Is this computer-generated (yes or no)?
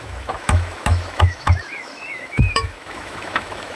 yes